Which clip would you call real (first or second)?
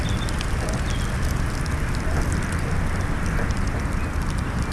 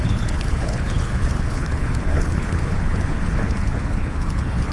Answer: first